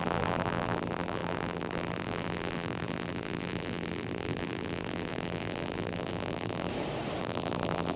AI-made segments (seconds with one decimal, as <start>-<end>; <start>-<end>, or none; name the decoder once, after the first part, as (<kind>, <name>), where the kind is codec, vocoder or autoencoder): 0.0-6.7 (vocoder, BigVGAN v2); 7.2-8.0